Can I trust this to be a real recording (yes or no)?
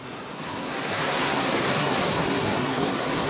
no